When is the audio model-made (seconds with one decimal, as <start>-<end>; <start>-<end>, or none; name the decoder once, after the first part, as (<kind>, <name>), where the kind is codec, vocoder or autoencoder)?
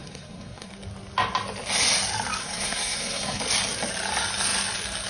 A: 0.0-0.7 (codec, SNAC); 2.4-3.4